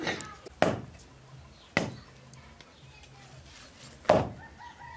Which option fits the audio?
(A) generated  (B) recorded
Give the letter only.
B